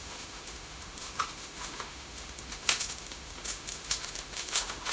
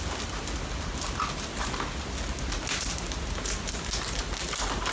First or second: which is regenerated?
first